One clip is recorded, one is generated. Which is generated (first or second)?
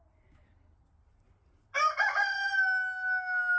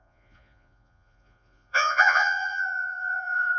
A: second